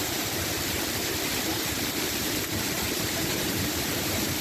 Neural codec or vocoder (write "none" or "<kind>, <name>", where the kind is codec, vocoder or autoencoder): vocoder, BigVGAN v2